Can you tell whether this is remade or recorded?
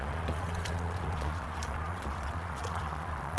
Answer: remade